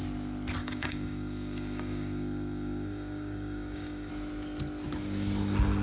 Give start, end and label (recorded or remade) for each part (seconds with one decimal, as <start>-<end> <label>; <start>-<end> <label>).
0.0-0.6 recorded; 0.6-4.1 remade; 4.1-5.8 recorded